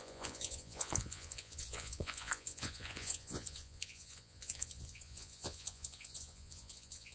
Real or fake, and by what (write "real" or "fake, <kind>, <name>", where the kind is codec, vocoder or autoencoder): fake, vocoder, Vocos